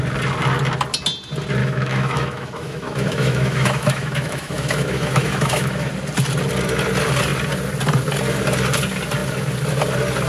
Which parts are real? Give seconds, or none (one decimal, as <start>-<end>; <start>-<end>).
0.0-1.6; 5.9-10.3